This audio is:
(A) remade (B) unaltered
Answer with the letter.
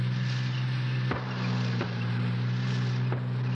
B